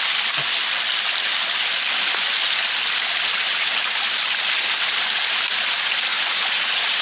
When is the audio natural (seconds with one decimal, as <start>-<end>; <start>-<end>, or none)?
0.0-6.1